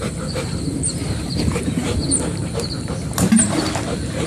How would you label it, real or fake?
fake